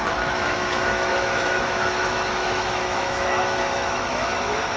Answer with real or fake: fake